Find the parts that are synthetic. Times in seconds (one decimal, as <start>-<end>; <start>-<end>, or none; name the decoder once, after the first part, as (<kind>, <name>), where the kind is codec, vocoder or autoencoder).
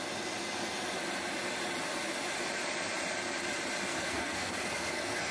3.9-5.3 (codec, SNAC)